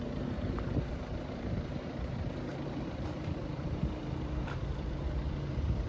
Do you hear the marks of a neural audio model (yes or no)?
yes